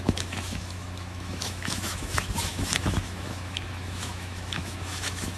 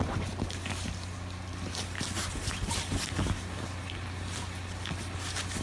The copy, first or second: first